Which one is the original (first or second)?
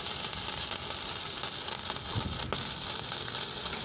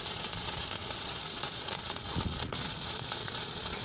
first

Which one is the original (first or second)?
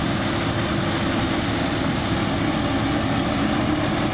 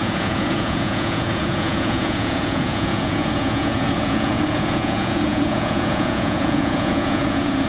first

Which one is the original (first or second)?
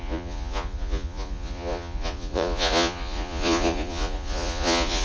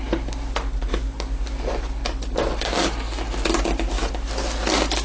second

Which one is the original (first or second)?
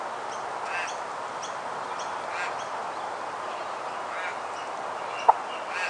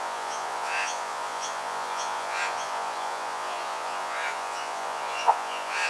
first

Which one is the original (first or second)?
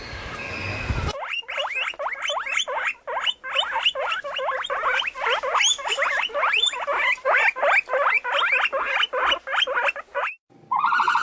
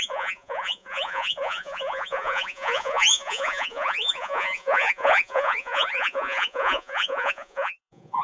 first